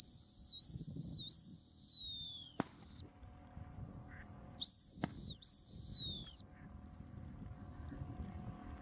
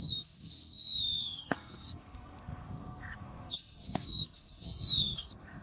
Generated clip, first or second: second